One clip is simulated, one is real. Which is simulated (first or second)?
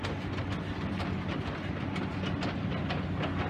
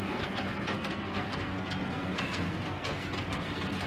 second